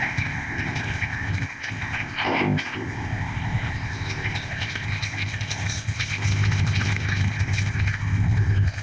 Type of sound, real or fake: fake